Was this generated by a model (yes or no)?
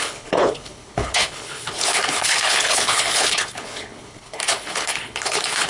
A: yes